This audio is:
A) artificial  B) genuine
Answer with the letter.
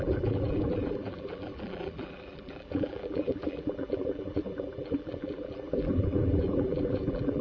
A